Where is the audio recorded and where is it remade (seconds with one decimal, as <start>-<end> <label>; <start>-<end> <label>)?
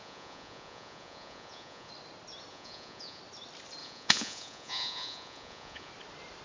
0.0-1.9 remade; 1.9-2.5 recorded; 2.5-3.2 remade; 3.2-3.8 recorded; 3.8-5.9 remade; 5.9-6.4 recorded